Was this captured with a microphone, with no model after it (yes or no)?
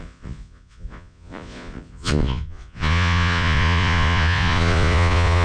no